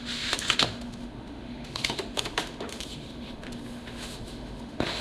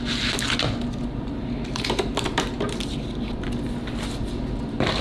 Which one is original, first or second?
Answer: second